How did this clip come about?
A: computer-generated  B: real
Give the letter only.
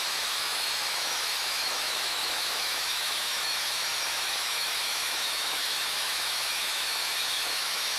A